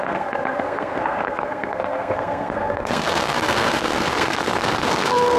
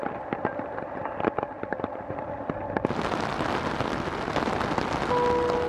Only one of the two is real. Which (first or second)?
second